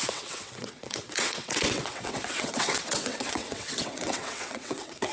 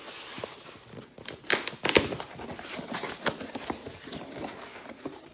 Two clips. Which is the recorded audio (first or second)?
second